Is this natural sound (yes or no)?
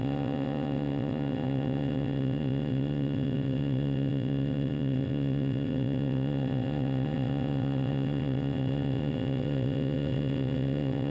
no